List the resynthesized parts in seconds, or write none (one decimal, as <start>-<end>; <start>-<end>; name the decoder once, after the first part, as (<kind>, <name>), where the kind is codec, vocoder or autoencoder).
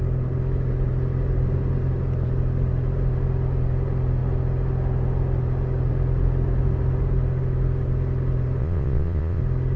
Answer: 8.6-9.4 (vocoder, Vocos)